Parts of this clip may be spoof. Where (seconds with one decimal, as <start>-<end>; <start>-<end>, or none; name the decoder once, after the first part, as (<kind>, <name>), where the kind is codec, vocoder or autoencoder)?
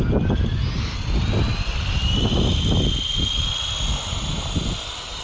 none